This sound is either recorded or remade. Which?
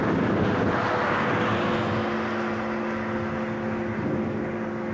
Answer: recorded